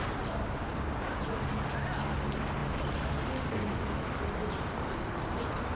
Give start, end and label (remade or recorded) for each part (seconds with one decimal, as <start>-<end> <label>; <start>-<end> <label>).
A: 0.0-5.7 recorded